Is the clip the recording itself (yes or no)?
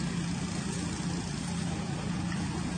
yes